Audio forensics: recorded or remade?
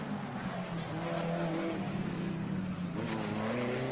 recorded